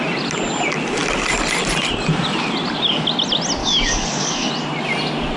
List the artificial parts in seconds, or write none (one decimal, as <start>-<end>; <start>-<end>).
3.6-4.5